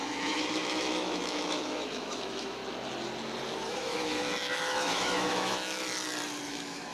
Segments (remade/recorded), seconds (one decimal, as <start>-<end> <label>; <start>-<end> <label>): 0.0-2.6 remade; 2.6-3.7 recorded; 3.7-5.8 remade; 5.8-6.5 recorded; 6.5-6.9 remade